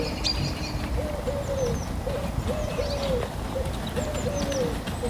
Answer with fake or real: real